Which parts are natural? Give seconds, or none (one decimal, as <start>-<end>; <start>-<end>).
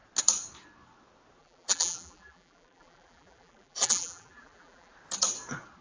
0.0-1.4; 4.9-5.8